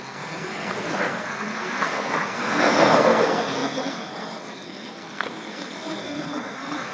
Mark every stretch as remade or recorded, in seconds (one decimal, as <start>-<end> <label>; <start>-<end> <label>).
0.0-6.9 remade